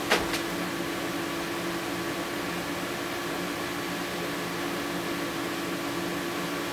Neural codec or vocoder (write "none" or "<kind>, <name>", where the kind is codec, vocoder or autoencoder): none